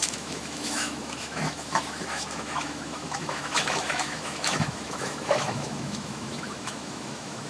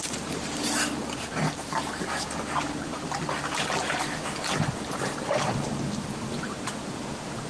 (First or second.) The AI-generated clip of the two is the first